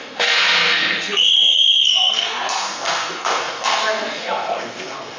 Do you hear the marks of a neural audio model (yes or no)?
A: yes